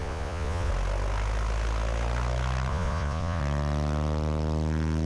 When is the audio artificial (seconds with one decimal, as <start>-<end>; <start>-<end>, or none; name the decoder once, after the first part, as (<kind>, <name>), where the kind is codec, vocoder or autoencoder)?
0.0-0.7 (vocoder, Vocos); 2.7-3.4